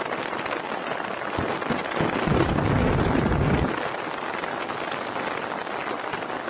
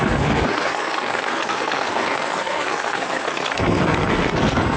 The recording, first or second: first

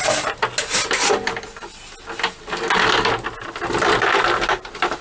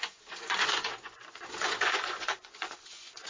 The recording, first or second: first